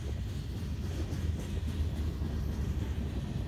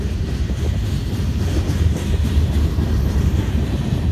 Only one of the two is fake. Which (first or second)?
second